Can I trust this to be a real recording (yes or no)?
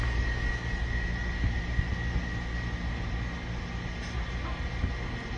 yes